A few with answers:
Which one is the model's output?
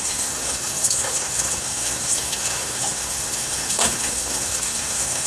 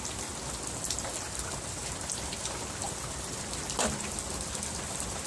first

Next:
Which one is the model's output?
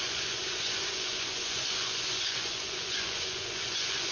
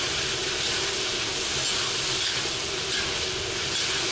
first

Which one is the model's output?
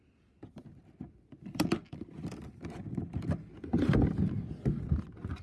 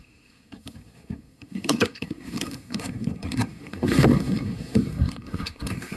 second